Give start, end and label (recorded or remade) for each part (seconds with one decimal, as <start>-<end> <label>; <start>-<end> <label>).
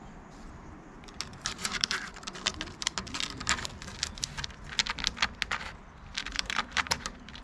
0.0-1.3 recorded; 1.3-1.9 remade; 1.9-6.3 recorded; 6.3-7.4 remade